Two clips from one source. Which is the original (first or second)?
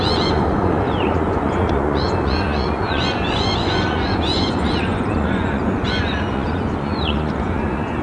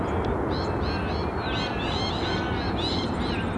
second